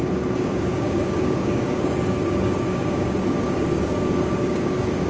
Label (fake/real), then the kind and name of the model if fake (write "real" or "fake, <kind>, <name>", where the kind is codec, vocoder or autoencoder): fake, codec, DAC